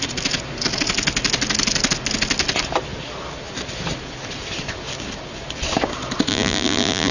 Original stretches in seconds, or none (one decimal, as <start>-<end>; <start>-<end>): 0.0-6.3